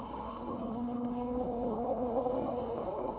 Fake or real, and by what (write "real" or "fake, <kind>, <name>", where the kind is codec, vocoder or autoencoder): fake, codec, SNAC